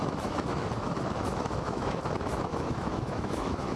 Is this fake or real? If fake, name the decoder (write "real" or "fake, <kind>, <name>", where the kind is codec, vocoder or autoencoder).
fake, autoencoder, DAC-VAE